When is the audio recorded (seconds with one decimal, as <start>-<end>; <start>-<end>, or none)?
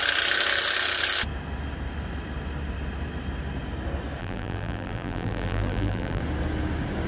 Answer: 0.0-4.2; 6.2-7.1